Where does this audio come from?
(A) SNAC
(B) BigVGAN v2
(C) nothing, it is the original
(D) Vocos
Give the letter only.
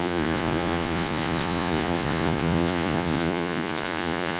D